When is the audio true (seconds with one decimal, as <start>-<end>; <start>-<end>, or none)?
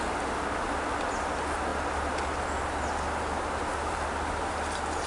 0.0-5.1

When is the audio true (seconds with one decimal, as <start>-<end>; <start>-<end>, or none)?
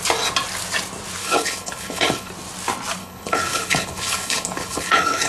0.0-1.2; 2.3-3.0